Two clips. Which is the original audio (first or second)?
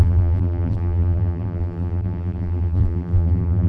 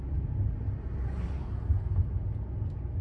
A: second